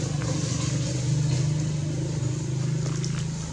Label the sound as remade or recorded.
recorded